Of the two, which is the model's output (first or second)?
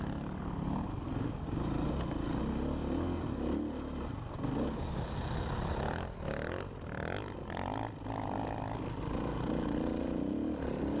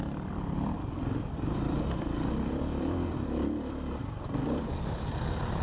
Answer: second